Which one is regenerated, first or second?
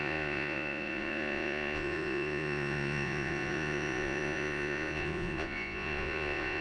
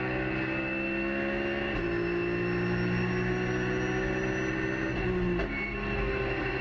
first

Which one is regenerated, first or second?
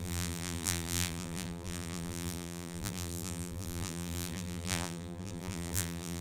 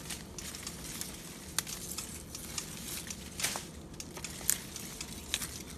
first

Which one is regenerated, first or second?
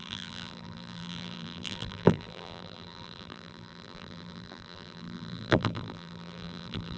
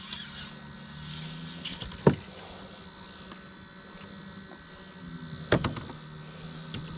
first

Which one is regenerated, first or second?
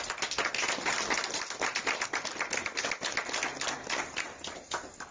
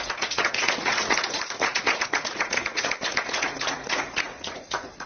second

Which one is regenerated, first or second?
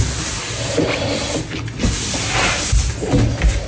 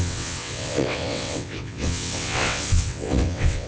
second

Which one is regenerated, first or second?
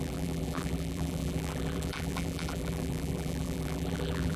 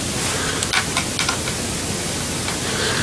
first